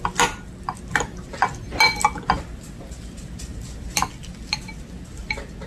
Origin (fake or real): real